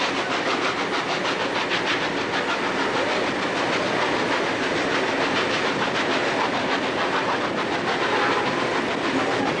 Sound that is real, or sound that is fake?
real